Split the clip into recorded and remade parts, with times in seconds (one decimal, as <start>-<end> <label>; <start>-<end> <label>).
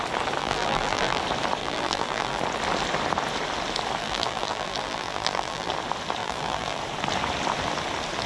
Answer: 0.0-0.4 recorded; 0.4-1.2 remade; 1.2-1.6 recorded; 1.6-2.4 remade; 2.4-4.0 recorded; 4.0-5.7 remade; 5.7-6.2 recorded; 6.2-6.8 remade; 6.8-8.3 recorded